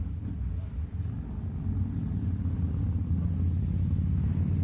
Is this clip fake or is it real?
real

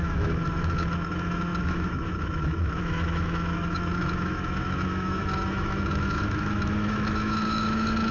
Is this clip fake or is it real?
fake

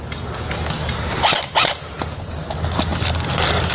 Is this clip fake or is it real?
real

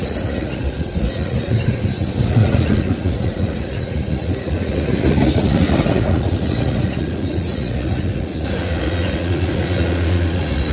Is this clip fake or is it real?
fake